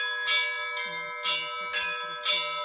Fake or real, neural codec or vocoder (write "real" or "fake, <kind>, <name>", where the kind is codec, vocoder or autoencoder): real